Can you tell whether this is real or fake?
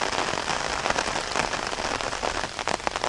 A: real